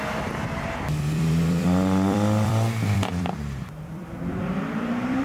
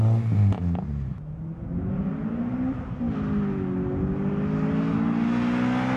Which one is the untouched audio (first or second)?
second